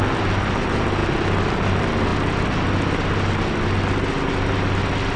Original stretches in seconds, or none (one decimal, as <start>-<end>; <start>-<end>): 0.0-5.2